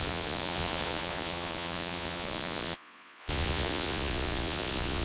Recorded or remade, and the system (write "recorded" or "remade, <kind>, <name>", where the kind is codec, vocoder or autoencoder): remade, vocoder, Vocos